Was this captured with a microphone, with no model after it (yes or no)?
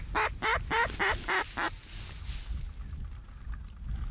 yes